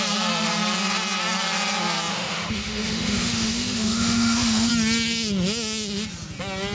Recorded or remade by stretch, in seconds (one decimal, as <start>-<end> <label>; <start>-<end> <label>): 0.0-2.1 recorded; 2.1-4.7 remade; 4.7-6.7 recorded

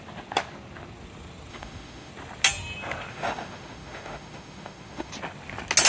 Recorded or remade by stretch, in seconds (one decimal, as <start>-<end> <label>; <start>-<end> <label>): 0.0-1.5 recorded; 1.5-2.1 remade; 2.1-3.1 recorded; 3.1-5.1 remade; 5.1-5.9 recorded

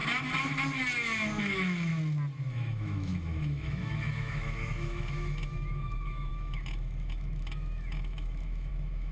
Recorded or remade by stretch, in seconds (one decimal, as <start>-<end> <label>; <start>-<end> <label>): 0.0-1.4 recorded; 1.4-1.9 remade; 1.9-2.5 recorded; 2.5-9.1 remade

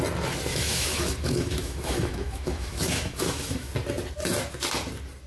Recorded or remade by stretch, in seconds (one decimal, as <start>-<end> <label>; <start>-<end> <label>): 0.0-0.5 recorded; 0.5-3.7 remade; 3.7-5.3 recorded

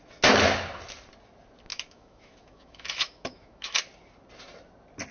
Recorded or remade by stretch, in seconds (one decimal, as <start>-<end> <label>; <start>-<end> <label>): 0.0-1.7 recorded; 1.7-3.8 remade; 3.8-5.1 recorded